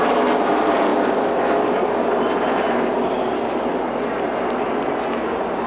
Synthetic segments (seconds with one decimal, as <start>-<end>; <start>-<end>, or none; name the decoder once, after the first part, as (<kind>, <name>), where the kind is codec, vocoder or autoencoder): none